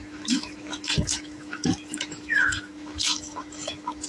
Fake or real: fake